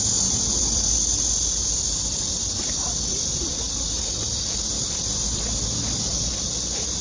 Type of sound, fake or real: fake